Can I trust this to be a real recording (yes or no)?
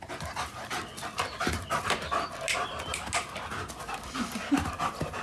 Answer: yes